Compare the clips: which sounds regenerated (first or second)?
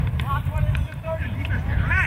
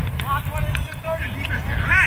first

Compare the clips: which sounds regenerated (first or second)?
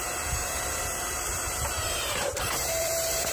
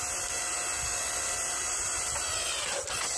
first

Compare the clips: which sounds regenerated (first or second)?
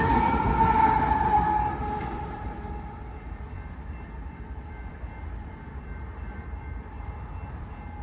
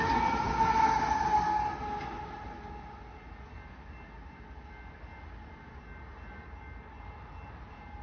first